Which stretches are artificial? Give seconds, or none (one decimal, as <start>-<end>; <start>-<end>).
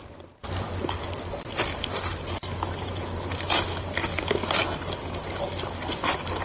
none